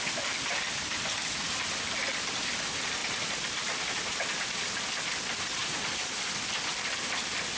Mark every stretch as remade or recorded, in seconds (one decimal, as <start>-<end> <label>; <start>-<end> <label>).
0.0-3.0 recorded; 3.0-4.6 remade; 4.6-5.6 recorded; 5.6-6.2 remade; 6.2-7.6 recorded